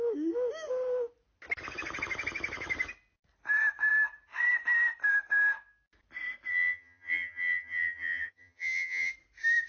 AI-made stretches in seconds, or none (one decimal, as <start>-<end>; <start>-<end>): 6.5-9.1